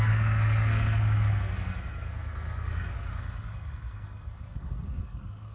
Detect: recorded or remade remade